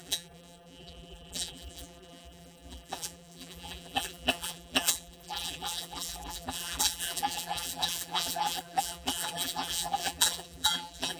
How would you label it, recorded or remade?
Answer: remade